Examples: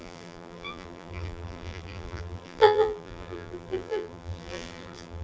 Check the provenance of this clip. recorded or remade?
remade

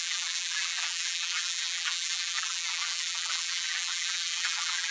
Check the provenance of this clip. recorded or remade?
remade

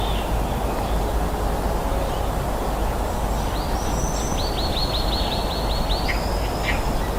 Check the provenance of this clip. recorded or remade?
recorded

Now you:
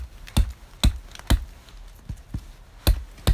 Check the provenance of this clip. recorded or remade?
recorded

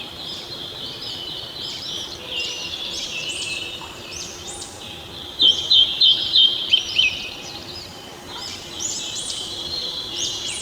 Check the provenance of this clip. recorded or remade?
remade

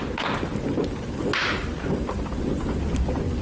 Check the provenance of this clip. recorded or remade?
recorded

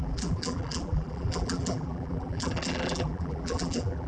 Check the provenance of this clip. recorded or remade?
remade